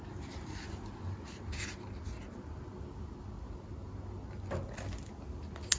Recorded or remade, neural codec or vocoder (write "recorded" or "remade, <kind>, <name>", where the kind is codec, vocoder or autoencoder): recorded